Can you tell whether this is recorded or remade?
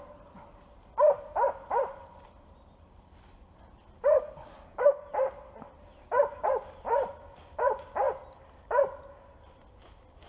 recorded